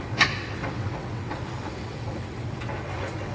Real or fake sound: fake